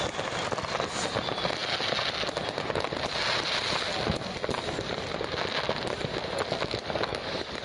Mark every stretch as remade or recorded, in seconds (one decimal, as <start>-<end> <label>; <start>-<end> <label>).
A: 0.0-6.8 recorded; 6.8-7.6 remade